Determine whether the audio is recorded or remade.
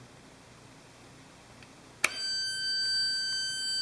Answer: recorded